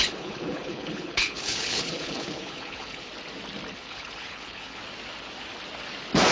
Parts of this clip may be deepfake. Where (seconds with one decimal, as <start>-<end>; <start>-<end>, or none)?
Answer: 0.0-3.1; 3.7-4.8